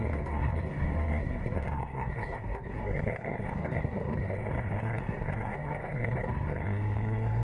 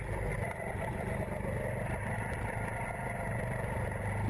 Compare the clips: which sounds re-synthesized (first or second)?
first